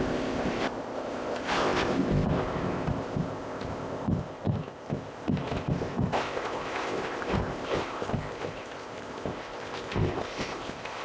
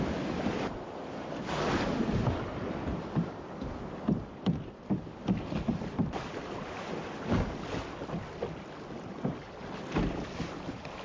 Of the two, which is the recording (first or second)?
second